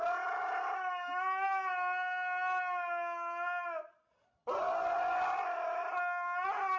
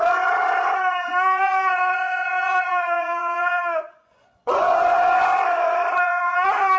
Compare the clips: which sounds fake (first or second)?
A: second